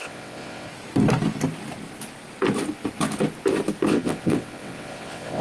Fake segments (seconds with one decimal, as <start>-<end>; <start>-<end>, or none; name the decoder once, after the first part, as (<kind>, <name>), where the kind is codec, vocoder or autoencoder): 0.0-0.7 (vocoder, WaveNeXt); 3.9-5.4